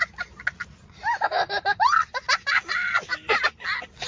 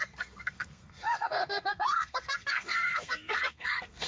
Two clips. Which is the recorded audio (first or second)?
first